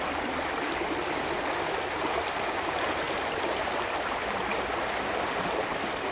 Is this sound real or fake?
real